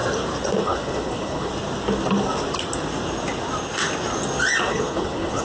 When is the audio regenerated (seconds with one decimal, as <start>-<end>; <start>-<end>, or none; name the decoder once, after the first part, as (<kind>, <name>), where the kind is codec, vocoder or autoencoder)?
0.6-1.5 (codec, HILCodec); 4.7-5.4